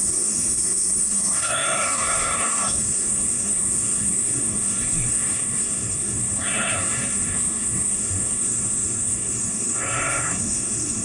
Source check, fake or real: fake